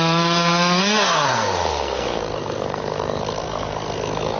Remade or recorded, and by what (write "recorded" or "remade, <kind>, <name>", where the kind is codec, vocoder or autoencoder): remade, codec, SNAC